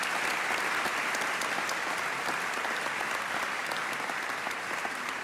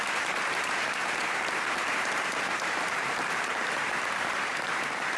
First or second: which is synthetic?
second